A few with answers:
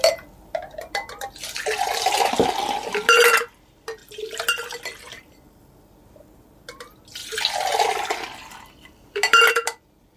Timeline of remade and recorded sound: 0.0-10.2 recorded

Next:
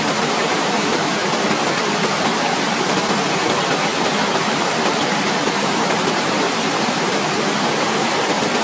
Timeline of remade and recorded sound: 0.0-1.2 remade; 1.2-4.0 recorded; 4.0-8.6 remade

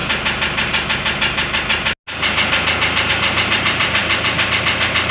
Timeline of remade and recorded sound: 0.0-3.1 recorded; 3.1-5.1 remade

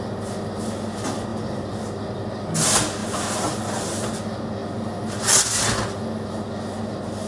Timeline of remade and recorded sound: 0.0-1.3 recorded; 1.3-1.8 remade; 1.8-3.0 recorded; 3.0-3.5 remade; 3.5-7.3 recorded